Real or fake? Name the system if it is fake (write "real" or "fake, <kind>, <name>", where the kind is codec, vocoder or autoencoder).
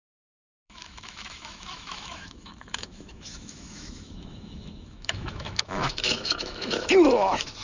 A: fake, autoencoder, DAC-VAE